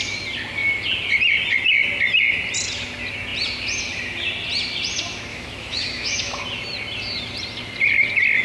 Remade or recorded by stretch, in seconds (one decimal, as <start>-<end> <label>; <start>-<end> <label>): 0.0-5.3 recorded; 5.3-6.4 remade; 6.4-8.4 recorded